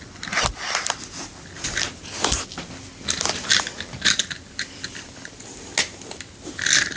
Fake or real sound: real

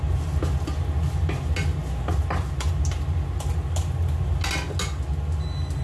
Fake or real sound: real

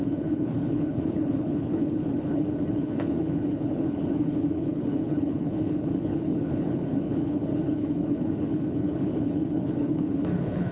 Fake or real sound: fake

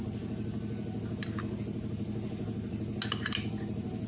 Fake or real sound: real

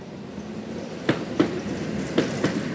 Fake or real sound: real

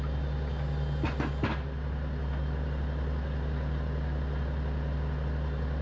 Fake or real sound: real